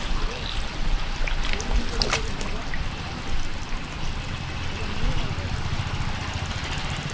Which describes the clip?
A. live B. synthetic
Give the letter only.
A